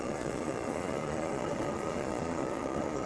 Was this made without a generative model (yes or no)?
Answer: no